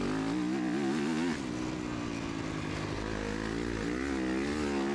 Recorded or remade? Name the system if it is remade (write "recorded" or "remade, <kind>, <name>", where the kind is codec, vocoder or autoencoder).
recorded